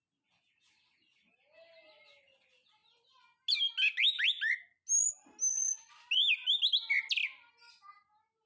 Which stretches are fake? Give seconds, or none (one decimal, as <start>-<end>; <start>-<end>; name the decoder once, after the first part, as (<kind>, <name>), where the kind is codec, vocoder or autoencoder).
none